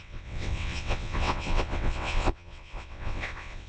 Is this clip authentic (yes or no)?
no